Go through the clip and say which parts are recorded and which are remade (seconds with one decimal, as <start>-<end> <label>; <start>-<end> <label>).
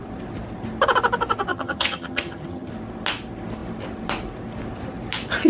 0.0-1.5 recorded; 1.5-2.7 remade; 2.7-5.5 recorded